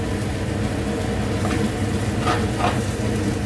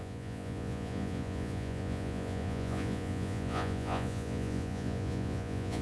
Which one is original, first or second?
first